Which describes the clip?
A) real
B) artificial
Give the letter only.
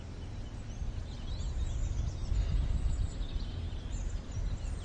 A